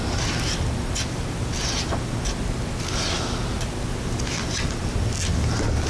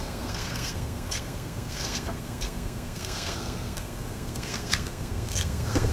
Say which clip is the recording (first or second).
first